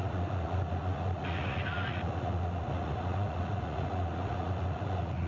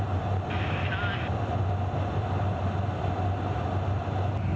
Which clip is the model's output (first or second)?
first